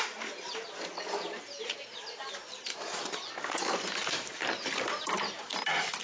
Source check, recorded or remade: remade